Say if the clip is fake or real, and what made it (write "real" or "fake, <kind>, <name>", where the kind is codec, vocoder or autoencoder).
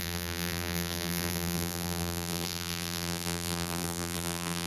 fake, vocoder, BigVGAN v2